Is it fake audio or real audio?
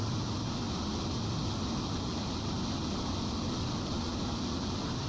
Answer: real